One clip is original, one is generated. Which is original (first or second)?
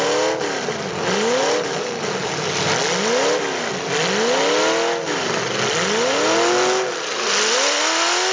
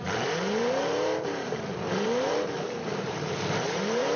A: first